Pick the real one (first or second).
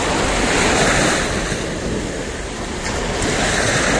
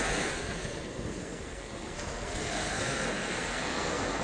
first